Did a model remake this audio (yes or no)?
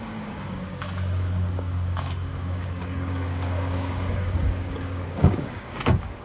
yes